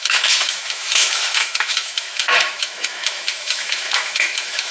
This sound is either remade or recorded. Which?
remade